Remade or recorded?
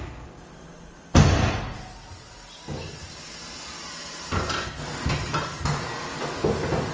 recorded